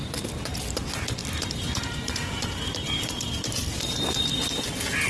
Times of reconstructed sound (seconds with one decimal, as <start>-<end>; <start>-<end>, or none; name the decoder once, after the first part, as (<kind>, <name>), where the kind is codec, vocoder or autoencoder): 1.2-4.3 (vocoder, BigVGAN v2)

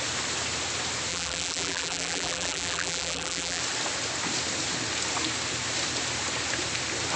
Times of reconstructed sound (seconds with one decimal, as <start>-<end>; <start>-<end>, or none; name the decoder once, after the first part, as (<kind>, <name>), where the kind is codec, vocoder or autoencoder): 1.1-3.6 (vocoder, BigVGAN v2)

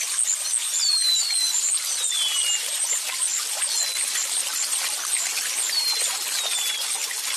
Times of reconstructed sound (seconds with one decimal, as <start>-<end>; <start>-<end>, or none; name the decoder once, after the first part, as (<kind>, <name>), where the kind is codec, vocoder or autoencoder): 0.7-5.1 (vocoder, BigVGAN v2)

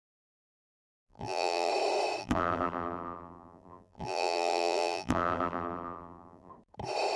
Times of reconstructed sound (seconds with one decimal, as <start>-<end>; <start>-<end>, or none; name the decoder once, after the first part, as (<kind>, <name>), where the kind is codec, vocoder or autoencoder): 0.8-1.7 (vocoder, BigVGAN v2); 2.2-6.5